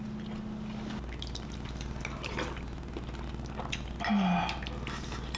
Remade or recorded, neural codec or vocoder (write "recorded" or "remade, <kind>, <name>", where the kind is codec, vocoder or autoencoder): recorded